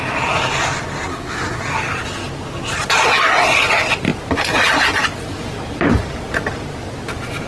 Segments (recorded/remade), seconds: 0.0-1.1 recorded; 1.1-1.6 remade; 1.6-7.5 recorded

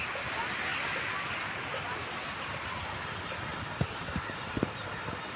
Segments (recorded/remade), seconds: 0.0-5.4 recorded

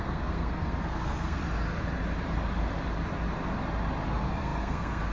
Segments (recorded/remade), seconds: 0.0-1.4 remade; 1.4-4.1 recorded; 4.1-5.1 remade